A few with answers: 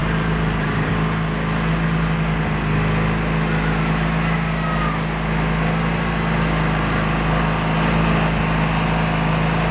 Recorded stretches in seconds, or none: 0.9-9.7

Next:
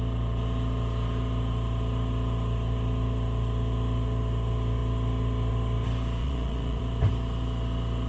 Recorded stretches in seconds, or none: 0.0-6.2; 6.8-8.1

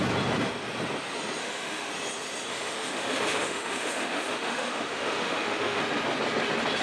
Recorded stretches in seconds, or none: 0.0-1.4; 1.9-2.5; 5.8-6.8

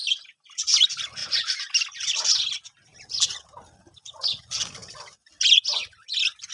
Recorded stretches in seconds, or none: 0.6-1.2; 1.7-6.5

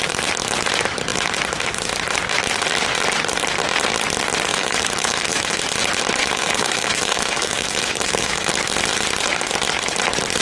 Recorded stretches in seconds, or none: 0.0-4.5; 5.6-6.2; 8.5-10.4